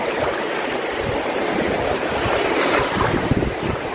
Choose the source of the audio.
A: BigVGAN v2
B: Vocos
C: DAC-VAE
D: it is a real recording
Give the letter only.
D